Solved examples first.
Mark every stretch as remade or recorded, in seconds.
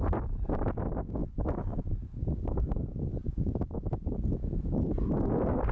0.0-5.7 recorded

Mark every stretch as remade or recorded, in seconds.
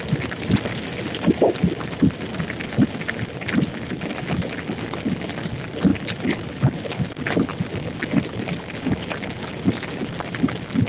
0.0-5.9 recorded; 5.9-7.1 remade; 7.1-7.5 recorded; 7.5-8.4 remade; 8.4-10.9 recorded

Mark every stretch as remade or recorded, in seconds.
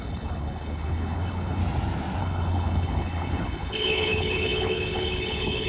0.0-1.6 remade; 1.6-2.2 recorded; 2.2-5.7 remade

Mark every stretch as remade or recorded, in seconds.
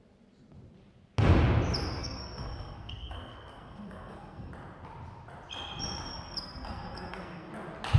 0.0-2.0 recorded; 2.0-4.5 remade; 4.5-6.1 recorded; 6.1-7.5 remade; 7.5-8.0 recorded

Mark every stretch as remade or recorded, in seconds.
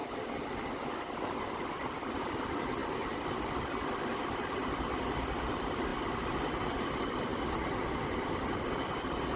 0.0-1.5 recorded; 1.5-2.8 remade; 2.8-4.4 recorded; 4.4-7.3 remade; 7.3-8.8 recorded; 8.8-9.4 remade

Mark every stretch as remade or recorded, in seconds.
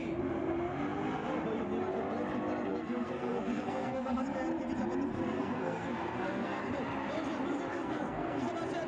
0.0-2.7 recorded; 2.7-4.2 remade; 4.2-5.1 recorded; 5.1-6.6 remade; 6.6-7.7 recorded; 7.7-8.5 remade; 8.5-8.9 recorded